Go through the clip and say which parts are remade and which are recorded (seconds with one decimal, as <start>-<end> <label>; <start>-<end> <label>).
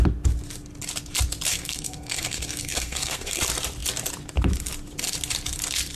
0.0-1.5 recorded; 1.5-3.4 remade; 3.4-6.0 recorded